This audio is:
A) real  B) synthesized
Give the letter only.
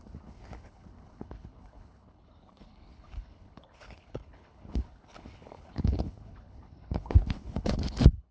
B